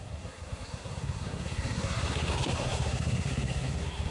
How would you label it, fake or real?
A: fake